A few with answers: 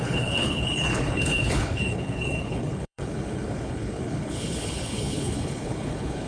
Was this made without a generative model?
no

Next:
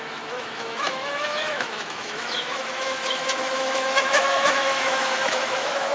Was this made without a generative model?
no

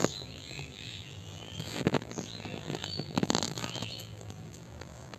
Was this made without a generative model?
no